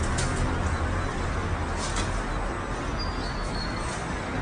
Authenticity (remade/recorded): recorded